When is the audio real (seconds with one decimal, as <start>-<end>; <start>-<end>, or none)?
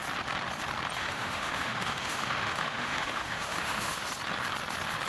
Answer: 0.0-1.0; 4.1-5.1